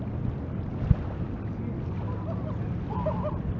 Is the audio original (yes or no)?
yes